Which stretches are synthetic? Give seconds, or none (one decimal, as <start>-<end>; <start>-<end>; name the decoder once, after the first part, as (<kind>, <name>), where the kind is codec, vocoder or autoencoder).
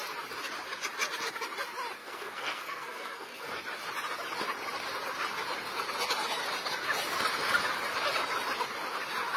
2.0-3.5 (codec, SNAC)